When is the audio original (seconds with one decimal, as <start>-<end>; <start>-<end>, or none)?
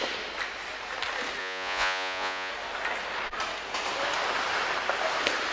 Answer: 0.0-1.4; 2.5-5.5